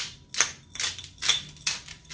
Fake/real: real